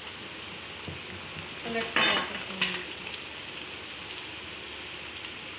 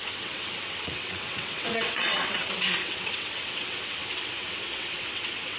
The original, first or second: first